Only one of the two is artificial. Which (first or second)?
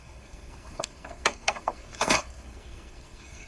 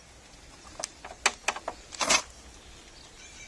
first